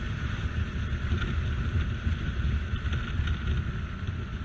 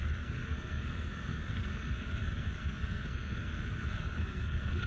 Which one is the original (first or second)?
first